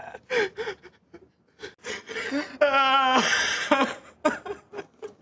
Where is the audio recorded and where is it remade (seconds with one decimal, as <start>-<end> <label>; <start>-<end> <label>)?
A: 0.0-1.9 recorded; 1.9-2.5 remade; 2.5-4.8 recorded; 4.8-5.2 remade